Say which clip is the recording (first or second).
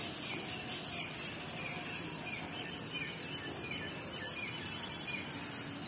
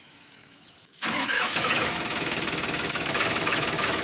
first